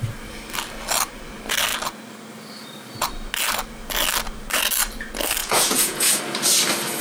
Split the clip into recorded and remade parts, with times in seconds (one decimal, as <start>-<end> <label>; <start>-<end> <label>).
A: 0.0-5.4 recorded; 5.4-6.2 remade; 6.2-7.0 recorded